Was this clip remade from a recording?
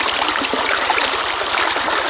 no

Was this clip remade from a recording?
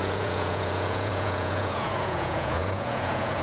yes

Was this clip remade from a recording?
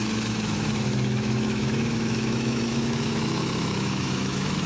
yes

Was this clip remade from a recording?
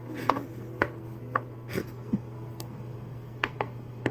yes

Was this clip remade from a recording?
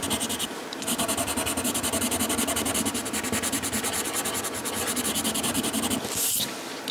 no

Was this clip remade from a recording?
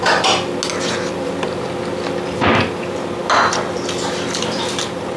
no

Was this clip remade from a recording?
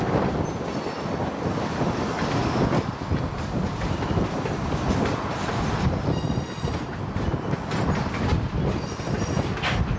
no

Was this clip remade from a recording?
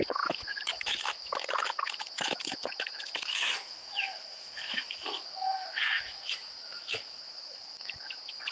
yes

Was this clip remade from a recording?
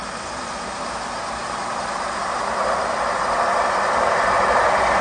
no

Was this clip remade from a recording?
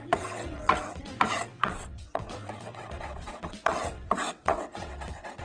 yes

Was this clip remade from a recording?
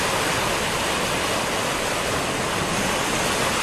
no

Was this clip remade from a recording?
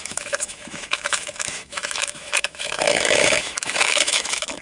yes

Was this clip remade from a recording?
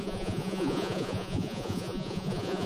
yes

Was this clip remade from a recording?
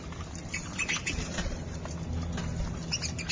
no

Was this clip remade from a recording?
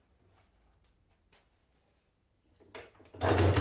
no